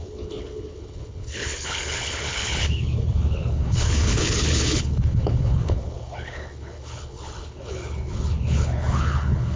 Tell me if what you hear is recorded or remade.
remade